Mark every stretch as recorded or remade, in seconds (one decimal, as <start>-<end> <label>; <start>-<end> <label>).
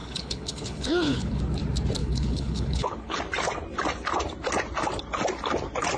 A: 0.0-1.4 remade; 1.4-2.0 recorded; 2.0-3.2 remade; 3.2-6.0 recorded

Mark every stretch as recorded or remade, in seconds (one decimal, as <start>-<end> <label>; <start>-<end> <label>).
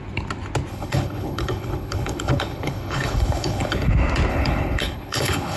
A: 0.0-0.7 recorded; 0.7-3.9 remade; 3.9-4.3 recorded; 4.3-5.6 remade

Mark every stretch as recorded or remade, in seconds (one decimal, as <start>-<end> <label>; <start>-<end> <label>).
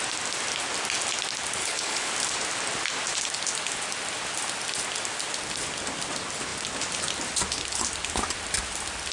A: 0.0-1.6 recorded; 1.6-2.1 remade; 2.1-9.1 recorded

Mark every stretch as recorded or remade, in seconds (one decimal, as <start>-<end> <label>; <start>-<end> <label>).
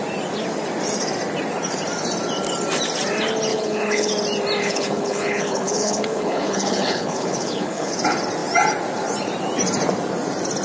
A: 0.0-3.5 recorded; 3.5-4.1 remade; 4.1-4.6 recorded; 4.6-7.9 remade; 7.9-10.6 recorded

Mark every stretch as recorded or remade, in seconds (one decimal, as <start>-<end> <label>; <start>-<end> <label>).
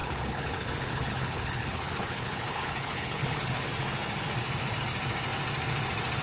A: 0.0-3.7 remade; 3.7-6.2 recorded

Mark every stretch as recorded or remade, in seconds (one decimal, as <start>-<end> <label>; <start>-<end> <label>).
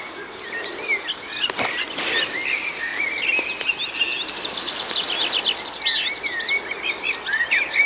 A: 0.0-7.9 recorded